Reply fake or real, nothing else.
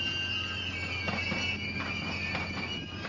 real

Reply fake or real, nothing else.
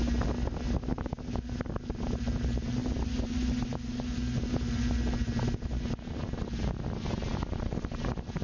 real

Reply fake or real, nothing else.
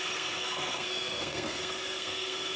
fake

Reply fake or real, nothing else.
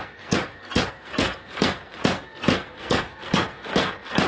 fake